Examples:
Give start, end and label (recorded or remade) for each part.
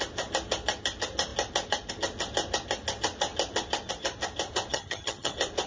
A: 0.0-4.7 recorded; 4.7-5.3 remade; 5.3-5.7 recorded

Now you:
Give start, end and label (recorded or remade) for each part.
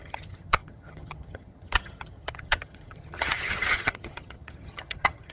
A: 0.0-5.3 remade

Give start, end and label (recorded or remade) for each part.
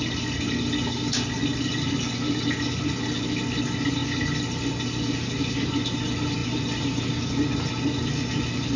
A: 0.0-8.8 recorded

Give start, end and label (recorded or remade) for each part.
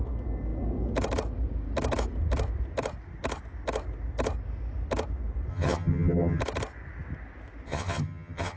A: 0.0-5.5 recorded; 5.5-6.4 remade; 6.4-7.7 recorded; 7.7-8.6 remade